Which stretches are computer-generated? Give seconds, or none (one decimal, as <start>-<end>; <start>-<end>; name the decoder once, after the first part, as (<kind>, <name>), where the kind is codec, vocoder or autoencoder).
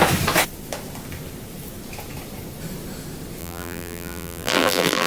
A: 3.4-5.1 (vocoder, BigVGAN v2)